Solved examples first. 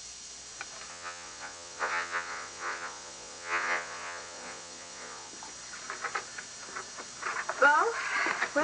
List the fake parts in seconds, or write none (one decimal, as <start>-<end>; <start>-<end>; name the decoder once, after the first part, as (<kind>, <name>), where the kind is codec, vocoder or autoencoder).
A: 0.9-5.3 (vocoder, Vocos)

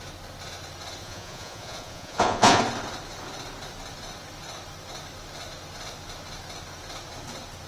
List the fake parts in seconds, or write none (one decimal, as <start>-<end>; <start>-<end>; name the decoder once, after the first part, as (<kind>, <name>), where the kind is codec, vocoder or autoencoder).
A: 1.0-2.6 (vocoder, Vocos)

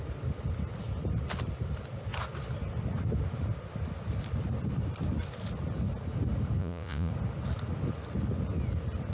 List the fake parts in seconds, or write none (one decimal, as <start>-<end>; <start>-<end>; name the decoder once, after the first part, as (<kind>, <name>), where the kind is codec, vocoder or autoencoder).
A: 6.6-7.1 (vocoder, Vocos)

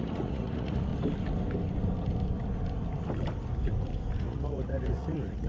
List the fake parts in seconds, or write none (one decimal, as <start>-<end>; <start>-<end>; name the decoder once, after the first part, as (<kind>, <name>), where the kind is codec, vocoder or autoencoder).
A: 0.0-0.9 (vocoder, Vocos); 4.2-5.5